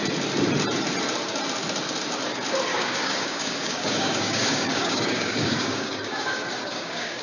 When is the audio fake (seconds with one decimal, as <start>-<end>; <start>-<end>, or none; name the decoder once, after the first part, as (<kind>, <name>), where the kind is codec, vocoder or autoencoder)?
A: 2.7-7.2 (codec, DAC)